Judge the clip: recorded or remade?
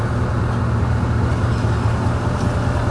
recorded